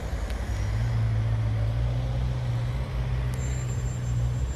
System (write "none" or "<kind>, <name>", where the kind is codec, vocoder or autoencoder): none